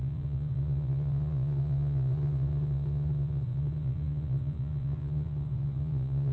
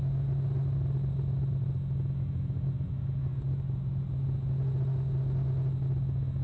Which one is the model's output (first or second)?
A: first